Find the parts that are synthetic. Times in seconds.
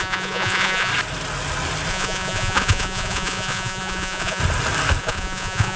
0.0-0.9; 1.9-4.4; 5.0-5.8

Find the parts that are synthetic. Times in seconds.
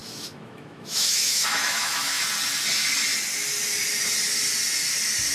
0.0-2.2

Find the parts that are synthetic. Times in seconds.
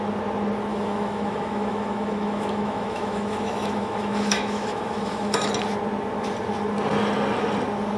0.7-5.5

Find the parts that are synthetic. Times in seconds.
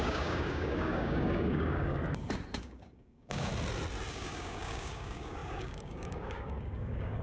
0.0-2.0; 2.6-3.5; 4.1-7.2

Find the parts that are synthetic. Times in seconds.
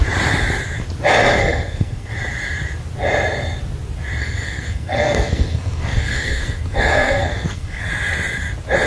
1.4-2.1; 4.2-7.9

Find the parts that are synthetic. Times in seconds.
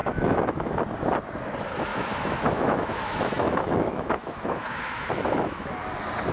0.0-0.7; 1.9-5.7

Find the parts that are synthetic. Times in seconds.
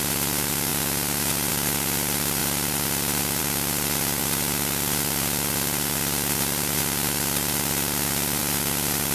none